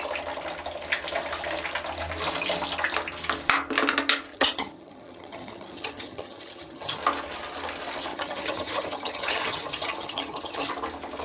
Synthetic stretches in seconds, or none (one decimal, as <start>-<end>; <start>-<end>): 4.3-7.0; 8.1-10.7